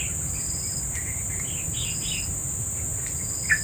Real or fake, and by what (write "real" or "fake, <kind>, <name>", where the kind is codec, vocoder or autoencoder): real